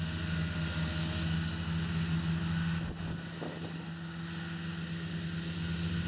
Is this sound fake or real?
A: real